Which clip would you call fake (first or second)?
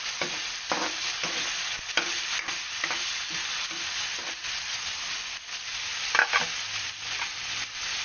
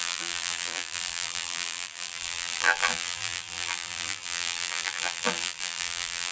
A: second